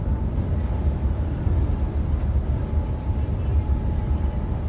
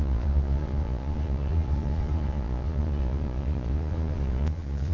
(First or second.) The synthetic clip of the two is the second